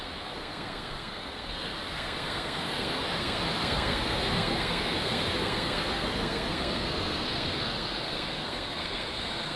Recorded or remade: remade